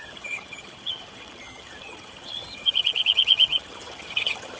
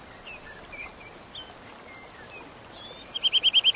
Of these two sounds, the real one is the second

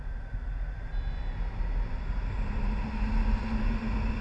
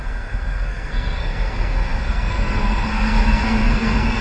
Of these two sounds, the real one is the first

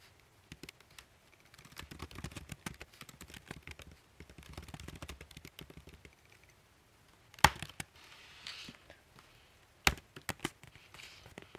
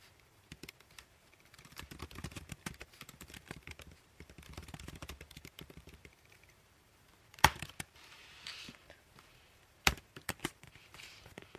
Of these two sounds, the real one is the first